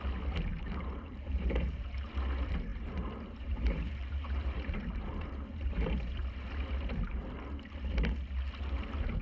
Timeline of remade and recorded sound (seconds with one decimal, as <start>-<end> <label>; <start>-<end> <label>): 0.0-0.5 recorded; 0.5-2.1 remade; 2.1-2.7 recorded; 2.7-6.1 remade; 6.1-9.2 recorded